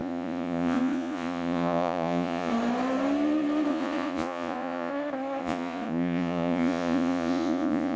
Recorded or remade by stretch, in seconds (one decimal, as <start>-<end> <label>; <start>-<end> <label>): 0.0-2.5 remade; 2.5-3.7 recorded; 3.7-4.9 remade; 4.9-5.4 recorded; 5.4-8.0 remade